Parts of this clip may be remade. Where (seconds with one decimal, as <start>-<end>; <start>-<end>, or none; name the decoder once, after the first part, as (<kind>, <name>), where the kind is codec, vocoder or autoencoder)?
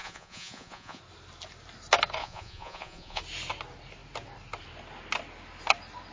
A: 0.0-1.0 (vocoder, Vocos); 2.2-3.2